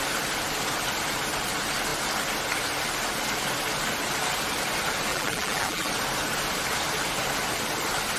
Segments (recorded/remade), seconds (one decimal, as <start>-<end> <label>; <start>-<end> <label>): 0.0-5.1 recorded; 5.1-5.9 remade; 5.9-8.2 recorded